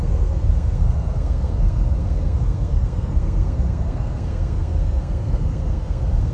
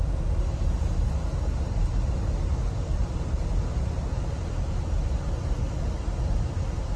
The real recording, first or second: second